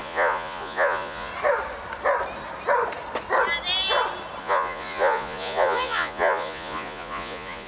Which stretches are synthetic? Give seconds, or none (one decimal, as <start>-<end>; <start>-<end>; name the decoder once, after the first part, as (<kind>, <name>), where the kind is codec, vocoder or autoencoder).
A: 0.0-1.3 (vocoder, Vocos); 4.4-7.7